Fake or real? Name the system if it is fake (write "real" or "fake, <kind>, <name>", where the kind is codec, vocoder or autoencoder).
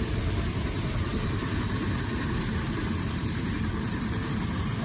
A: fake, vocoder, BigVGAN v2